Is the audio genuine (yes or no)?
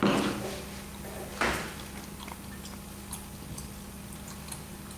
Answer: yes